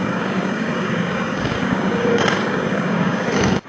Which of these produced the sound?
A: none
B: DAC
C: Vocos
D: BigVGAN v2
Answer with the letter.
B